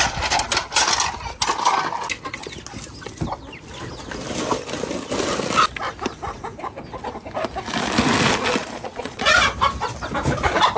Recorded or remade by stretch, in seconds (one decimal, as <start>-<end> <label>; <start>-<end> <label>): 0.0-8.6 recorded; 8.6-9.2 remade; 9.2-10.8 recorded